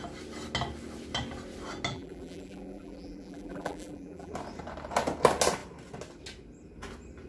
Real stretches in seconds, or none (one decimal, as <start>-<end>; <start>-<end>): 0.0-1.9; 4.3-7.3